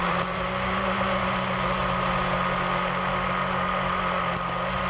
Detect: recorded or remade recorded